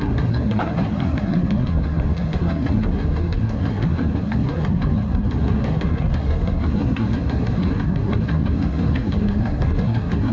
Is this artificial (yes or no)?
yes